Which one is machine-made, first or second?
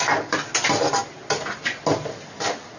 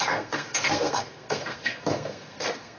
second